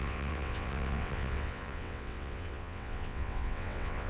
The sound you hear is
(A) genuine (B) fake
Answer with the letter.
B